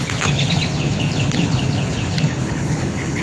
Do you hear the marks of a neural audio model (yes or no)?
yes